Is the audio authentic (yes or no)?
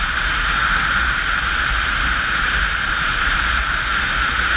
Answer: yes